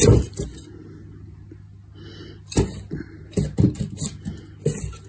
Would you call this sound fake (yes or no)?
no